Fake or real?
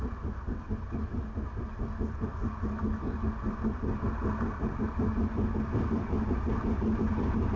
real